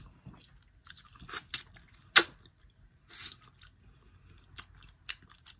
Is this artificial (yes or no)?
no